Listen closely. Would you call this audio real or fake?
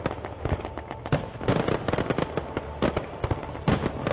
real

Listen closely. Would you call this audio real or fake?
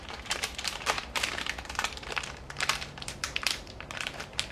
fake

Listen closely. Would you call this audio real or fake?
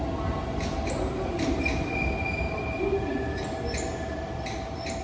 real